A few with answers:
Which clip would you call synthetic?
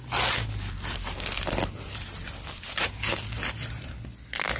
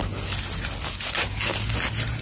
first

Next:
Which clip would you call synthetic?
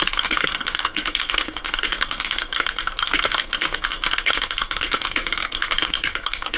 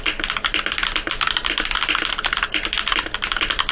first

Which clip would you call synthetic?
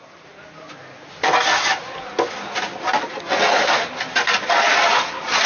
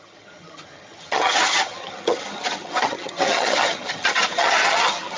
second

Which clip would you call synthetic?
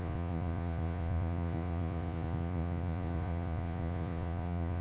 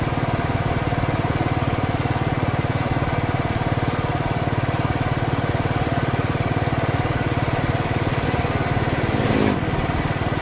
first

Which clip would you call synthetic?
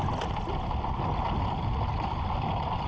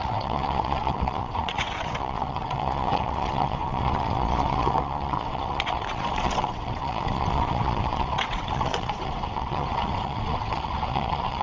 second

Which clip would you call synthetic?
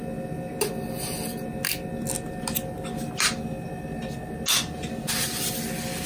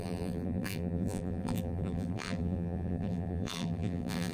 second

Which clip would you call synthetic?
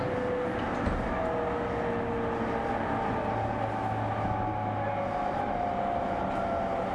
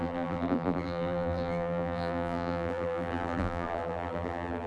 second